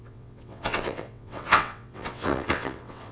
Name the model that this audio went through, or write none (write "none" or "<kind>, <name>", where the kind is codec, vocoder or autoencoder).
vocoder, WaveNeXt